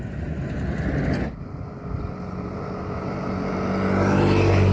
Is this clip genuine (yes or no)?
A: yes